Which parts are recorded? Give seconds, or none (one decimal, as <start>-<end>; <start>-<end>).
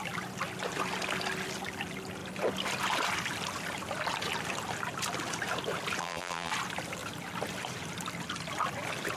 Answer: 0.0-6.0; 6.5-9.2